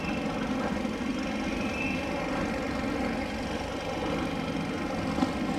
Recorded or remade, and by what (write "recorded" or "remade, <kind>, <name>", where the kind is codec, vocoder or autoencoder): recorded